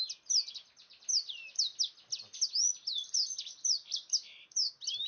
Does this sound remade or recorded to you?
recorded